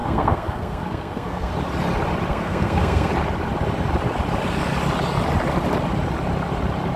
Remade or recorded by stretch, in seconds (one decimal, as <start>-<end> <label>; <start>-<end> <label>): 0.0-1.5 remade; 1.5-2.3 recorded; 2.3-3.1 remade; 3.1-7.0 recorded